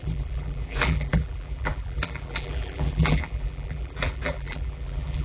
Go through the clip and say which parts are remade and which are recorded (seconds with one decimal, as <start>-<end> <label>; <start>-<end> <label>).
0.0-5.2 remade